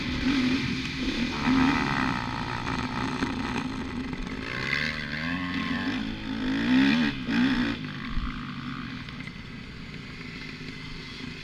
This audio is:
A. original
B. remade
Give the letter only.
A